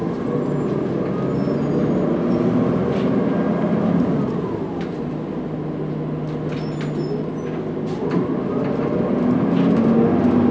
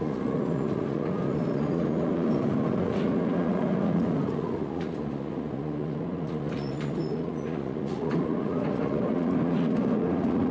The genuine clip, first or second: first